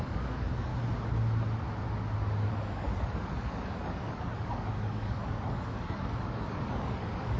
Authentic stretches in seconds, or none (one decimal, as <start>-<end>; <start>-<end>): 0.7-2.5